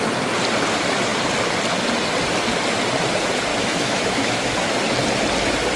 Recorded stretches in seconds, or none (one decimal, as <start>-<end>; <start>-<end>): 0.0-3.5; 4.5-5.8